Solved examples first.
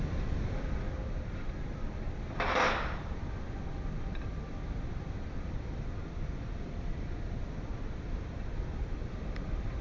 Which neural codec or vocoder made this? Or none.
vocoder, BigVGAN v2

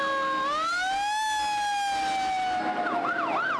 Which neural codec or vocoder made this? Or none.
none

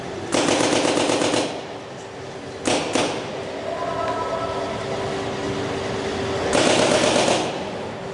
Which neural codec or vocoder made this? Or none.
none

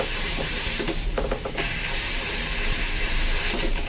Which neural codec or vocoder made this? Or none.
vocoder, BigVGAN v2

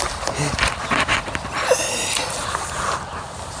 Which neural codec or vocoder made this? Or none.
none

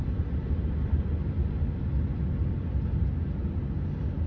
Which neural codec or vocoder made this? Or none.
none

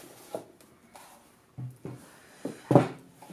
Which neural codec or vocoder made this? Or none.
none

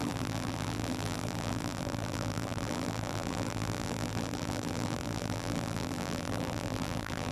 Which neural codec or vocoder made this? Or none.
vocoder, BigVGAN v2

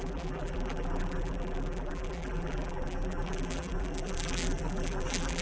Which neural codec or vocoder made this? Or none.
vocoder, BigVGAN v2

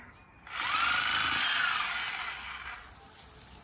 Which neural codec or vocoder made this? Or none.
none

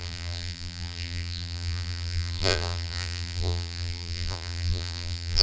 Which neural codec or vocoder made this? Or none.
vocoder, BigVGAN v2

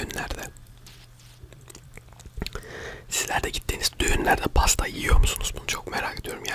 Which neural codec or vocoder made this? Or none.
none